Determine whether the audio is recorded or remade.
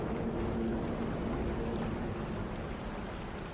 recorded